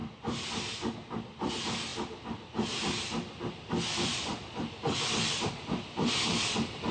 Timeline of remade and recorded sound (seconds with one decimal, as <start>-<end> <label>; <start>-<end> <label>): 0.0-6.9 recorded